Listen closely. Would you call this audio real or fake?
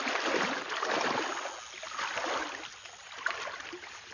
real